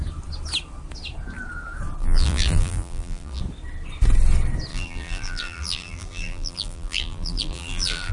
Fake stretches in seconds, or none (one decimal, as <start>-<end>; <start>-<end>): 2.0-3.4; 4.7-8.1